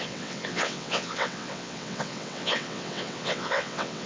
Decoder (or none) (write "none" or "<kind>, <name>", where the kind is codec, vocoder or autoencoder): vocoder, WaveNeXt